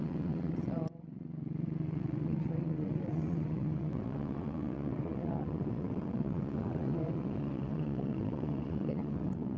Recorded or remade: remade